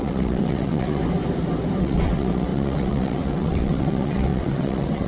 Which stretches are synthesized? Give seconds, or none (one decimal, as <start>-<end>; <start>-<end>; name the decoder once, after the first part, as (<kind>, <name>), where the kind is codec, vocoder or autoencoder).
0.0-1.0 (vocoder, WaveNeXt); 1.8-5.1